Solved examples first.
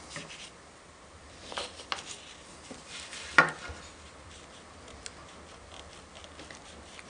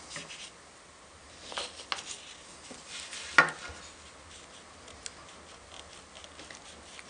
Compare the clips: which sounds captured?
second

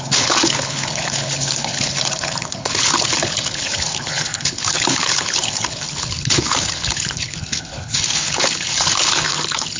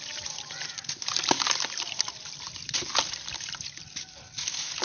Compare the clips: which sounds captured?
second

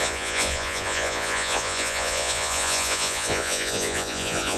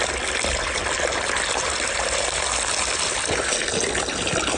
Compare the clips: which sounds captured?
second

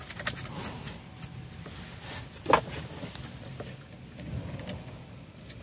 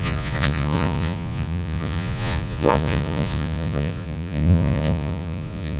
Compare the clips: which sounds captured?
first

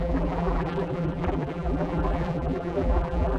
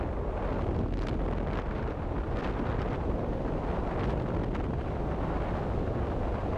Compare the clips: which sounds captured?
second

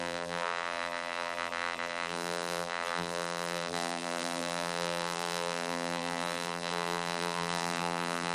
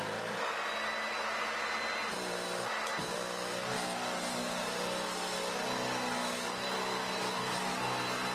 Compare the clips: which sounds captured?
second